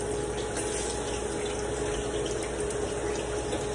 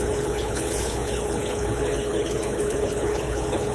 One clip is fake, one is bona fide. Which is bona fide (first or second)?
first